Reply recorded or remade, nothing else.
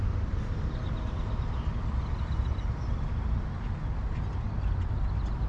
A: recorded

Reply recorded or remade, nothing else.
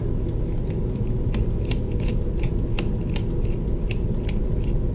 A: recorded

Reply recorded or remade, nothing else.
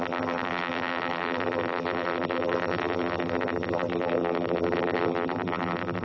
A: remade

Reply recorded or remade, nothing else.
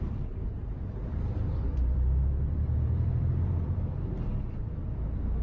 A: remade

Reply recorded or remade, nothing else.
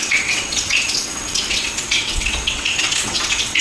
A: remade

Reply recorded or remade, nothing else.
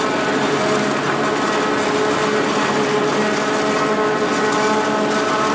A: recorded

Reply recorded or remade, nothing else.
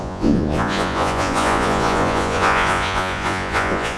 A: remade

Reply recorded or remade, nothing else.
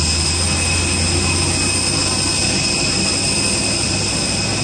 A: recorded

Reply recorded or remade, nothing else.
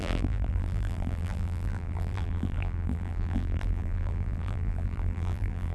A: remade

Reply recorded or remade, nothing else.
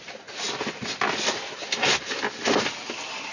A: recorded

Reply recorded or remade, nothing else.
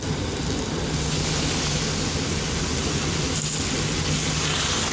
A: recorded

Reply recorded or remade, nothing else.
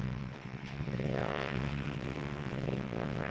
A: remade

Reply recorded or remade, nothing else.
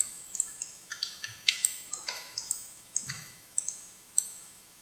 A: remade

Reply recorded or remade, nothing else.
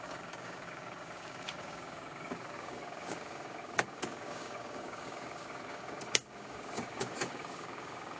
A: remade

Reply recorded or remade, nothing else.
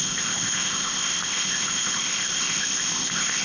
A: remade